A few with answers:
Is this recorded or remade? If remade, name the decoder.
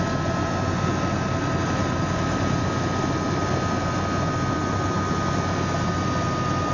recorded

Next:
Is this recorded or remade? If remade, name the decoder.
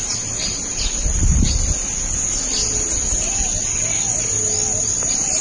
recorded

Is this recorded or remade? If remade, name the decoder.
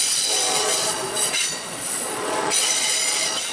remade, vocoder, Vocos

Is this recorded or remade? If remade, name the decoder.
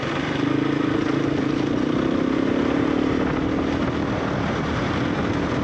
recorded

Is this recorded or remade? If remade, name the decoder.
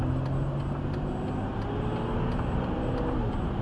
recorded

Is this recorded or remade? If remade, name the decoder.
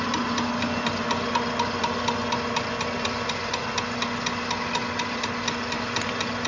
recorded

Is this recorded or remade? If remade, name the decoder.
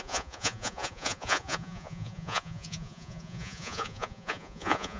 remade, vocoder, Vocos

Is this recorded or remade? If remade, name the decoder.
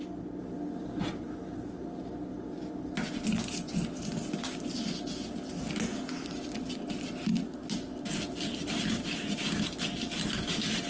recorded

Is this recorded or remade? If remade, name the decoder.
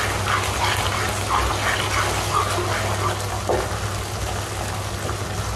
recorded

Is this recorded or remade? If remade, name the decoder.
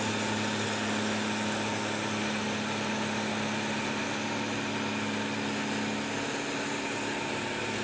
recorded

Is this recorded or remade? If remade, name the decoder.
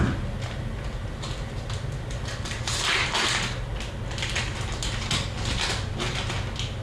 recorded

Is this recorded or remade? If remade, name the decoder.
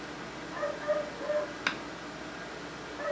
recorded